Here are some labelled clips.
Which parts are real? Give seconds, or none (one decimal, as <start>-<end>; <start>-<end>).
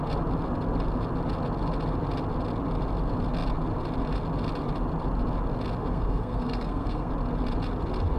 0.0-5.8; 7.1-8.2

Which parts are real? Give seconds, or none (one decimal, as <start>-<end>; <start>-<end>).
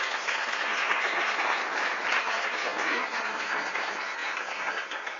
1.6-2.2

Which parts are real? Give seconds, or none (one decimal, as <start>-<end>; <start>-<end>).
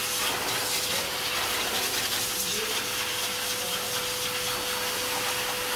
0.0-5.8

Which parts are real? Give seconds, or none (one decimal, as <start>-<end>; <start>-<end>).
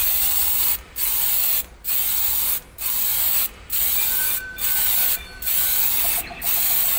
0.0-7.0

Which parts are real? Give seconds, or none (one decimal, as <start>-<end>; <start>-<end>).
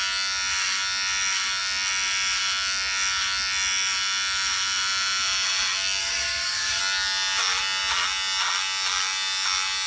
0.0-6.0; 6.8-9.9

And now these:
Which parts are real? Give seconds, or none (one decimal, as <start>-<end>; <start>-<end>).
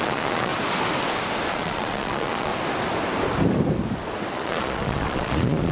0.5-1.5; 2.5-4.3